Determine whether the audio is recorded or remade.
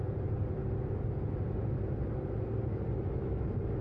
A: recorded